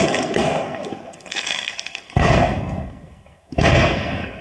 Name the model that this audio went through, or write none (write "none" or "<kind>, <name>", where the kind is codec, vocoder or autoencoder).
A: codec, SNAC